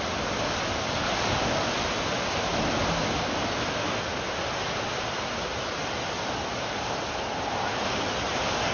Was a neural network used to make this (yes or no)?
no